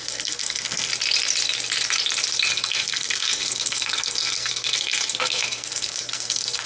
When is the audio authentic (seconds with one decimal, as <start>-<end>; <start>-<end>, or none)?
0.9-2.5